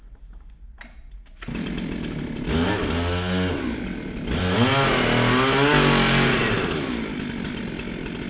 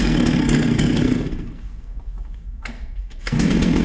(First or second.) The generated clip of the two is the second